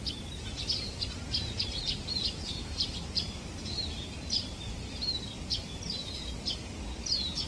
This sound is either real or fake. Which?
fake